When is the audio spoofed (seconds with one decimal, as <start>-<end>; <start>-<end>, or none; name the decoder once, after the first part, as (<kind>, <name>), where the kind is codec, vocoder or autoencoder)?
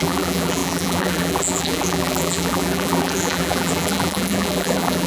0.0-5.1 (vocoder, BigVGAN v2)